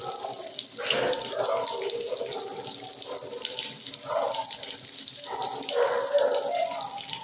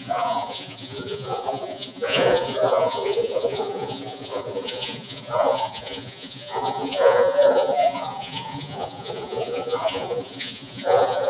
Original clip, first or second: first